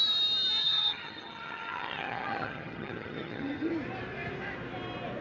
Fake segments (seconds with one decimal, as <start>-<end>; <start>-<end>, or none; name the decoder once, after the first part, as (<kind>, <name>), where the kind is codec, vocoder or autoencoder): 0.6-3.7 (vocoder, HiFi-GAN)